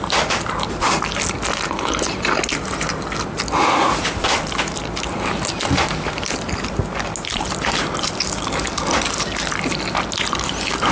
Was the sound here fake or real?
real